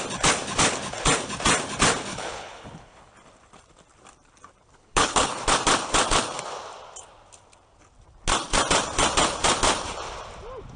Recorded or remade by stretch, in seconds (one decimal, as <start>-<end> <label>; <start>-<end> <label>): 0.0-2.1 recorded; 2.1-3.1 remade; 3.1-4.7 recorded; 4.7-5.3 remade; 5.3-10.8 recorded